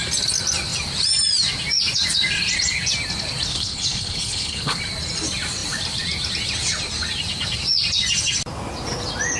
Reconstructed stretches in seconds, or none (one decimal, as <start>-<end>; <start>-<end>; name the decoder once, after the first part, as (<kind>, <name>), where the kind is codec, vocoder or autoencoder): 3.5-4.8 (codec, HILCodec)